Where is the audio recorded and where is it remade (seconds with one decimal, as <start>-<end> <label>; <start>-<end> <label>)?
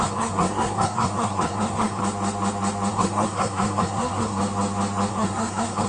0.0-2.0 remade; 2.0-2.9 recorded; 2.9-4.4 remade; 4.4-5.1 recorded; 5.1-5.9 remade